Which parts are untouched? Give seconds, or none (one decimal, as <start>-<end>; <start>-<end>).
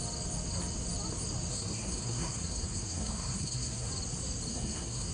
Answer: 0.0-1.5; 3.9-4.5